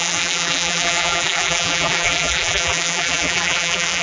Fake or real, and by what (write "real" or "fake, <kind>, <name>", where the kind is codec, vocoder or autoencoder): fake, vocoder, BigVGAN v2